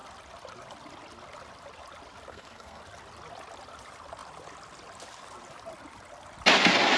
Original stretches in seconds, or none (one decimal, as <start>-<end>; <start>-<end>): 0.0-2.3; 2.8-7.0